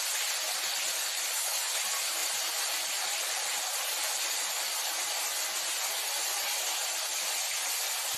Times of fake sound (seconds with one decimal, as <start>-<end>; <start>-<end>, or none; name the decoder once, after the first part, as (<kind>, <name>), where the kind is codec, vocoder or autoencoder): 2.2-4.4 (vocoder, BigVGAN v2)